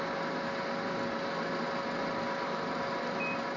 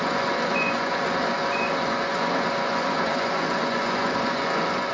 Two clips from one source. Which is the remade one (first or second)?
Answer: second